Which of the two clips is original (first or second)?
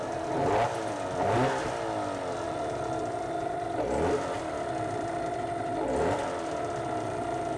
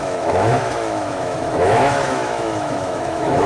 first